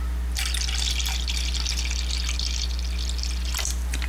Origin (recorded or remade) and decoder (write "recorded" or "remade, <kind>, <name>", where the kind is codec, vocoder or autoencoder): recorded